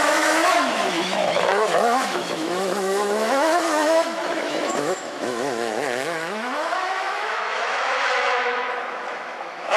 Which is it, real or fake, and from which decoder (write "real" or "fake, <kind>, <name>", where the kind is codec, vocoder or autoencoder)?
fake, autoencoder, DAC-VAE